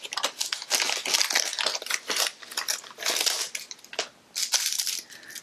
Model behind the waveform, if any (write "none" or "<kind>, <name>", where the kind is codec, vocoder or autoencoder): none